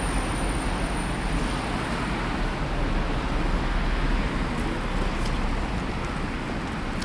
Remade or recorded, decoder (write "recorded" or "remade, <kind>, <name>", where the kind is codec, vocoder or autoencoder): recorded